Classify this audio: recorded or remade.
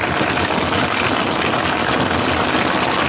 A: recorded